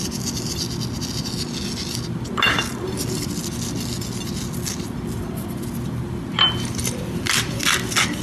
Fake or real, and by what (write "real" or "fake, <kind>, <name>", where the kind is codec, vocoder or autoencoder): real